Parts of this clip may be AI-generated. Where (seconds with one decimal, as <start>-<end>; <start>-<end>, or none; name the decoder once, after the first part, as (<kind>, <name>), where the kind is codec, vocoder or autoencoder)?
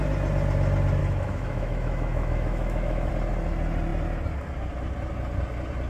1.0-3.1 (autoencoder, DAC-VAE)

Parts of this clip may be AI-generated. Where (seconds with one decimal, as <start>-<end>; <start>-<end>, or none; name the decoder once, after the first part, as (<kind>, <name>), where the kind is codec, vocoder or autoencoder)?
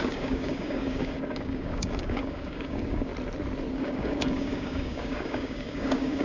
0.0-3.1 (codec, DAC); 3.7-6.2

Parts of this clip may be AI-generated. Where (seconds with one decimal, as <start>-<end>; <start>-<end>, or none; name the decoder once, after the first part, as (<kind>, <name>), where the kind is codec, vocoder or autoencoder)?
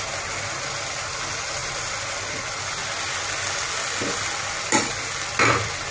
none